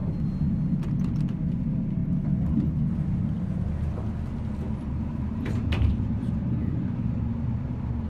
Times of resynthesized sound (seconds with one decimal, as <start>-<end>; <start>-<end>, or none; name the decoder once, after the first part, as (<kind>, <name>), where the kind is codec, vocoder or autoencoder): 1.3-2.0 (vocoder, BigVGAN v2); 4.6-8.1